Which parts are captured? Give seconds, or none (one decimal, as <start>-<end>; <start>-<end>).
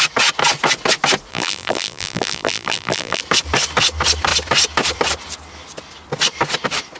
0.0-1.3; 3.2-7.0